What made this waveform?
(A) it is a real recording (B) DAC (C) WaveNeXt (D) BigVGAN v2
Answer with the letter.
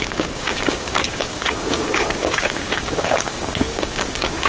B